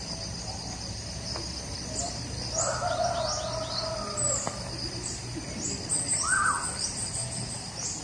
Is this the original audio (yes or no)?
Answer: yes